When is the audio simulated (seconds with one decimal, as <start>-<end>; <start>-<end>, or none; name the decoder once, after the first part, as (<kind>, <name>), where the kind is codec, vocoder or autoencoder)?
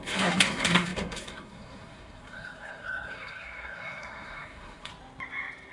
0.0-4.9 (codec, SNAC)